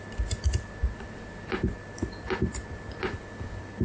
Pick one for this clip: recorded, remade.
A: recorded